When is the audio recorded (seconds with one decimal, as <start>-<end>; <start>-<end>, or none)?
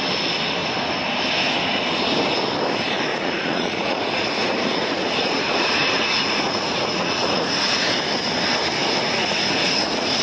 0.0-3.1; 7.9-9.0